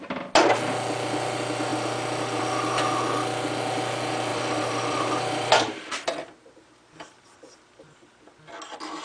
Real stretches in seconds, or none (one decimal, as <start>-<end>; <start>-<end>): 0.0-4.3; 8.3-9.0